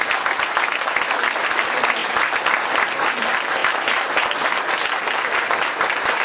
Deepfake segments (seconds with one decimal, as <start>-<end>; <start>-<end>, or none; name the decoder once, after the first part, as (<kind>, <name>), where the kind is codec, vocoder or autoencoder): none